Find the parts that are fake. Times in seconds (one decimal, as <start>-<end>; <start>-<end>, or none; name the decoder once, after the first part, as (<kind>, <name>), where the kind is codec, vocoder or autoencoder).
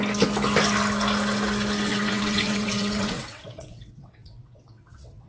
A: 1.9-5.3 (vocoder, WaveNeXt)